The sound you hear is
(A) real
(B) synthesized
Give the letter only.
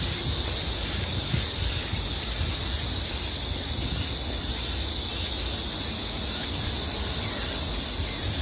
A